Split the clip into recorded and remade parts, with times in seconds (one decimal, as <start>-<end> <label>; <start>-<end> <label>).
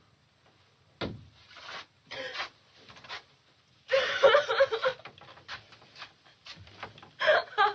0.0-7.7 recorded